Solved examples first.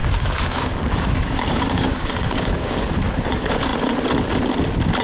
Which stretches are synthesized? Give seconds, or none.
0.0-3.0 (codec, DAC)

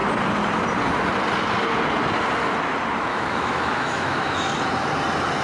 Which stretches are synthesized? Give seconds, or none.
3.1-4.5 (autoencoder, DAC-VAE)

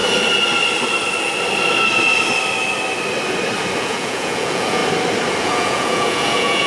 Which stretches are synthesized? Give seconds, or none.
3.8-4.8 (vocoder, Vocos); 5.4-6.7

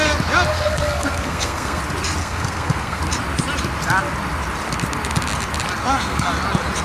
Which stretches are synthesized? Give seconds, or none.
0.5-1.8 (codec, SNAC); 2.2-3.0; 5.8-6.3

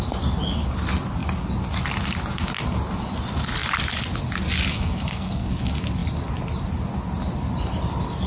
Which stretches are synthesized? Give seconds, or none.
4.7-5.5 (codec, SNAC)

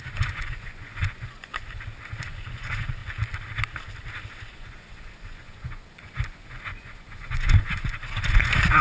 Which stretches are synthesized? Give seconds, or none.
0.0-1.5 (vocoder, Vocos); 2.2-3.0; 4.5-8.8